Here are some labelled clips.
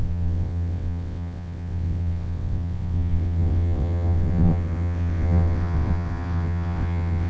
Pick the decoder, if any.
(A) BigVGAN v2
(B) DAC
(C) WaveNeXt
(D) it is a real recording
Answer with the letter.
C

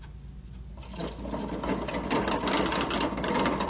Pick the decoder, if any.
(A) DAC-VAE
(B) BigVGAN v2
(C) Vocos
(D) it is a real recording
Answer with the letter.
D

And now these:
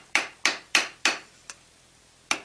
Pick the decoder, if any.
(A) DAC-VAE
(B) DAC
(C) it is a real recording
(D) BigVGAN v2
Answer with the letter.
D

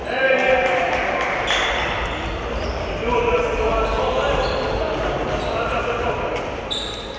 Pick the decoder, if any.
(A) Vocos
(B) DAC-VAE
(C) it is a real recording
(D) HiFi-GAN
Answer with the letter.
C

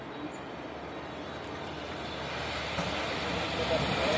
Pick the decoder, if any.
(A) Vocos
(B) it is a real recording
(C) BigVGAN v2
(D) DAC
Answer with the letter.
B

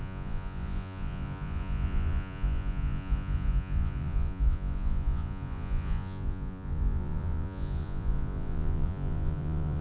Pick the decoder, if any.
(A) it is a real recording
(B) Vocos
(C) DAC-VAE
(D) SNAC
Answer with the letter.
B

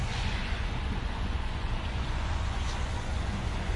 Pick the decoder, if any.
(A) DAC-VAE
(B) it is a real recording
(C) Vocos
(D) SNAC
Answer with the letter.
C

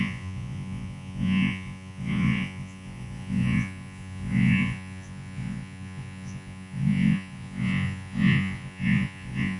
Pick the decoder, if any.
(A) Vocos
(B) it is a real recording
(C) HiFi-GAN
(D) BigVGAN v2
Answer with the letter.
A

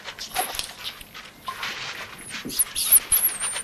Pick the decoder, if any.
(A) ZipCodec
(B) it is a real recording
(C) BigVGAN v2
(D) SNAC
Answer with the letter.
B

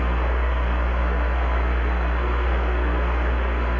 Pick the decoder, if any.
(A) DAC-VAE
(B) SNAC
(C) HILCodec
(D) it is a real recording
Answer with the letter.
B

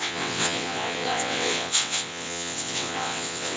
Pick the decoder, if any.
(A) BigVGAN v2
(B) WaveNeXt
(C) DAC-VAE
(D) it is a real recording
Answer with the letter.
B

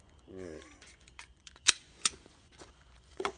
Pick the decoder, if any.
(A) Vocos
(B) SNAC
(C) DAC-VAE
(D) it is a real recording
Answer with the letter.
A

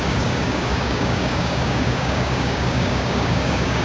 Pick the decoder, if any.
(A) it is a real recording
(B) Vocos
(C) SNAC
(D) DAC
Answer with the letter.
D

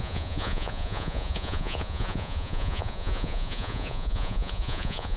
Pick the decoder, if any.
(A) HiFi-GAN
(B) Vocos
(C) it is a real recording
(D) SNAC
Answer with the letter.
B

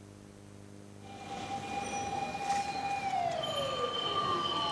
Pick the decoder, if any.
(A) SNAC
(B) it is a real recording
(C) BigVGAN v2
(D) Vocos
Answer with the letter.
B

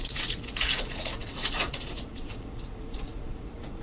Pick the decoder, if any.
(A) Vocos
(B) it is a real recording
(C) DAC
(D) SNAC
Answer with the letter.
A